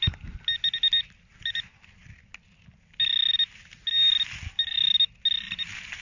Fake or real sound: real